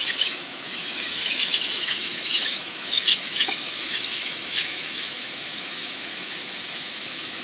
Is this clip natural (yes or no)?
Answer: no